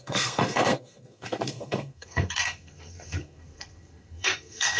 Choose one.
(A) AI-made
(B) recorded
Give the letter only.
A